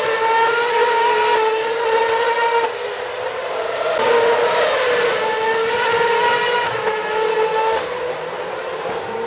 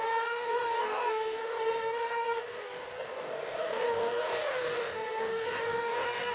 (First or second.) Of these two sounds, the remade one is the second